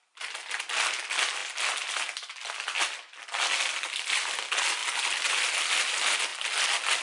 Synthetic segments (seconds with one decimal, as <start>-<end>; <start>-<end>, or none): none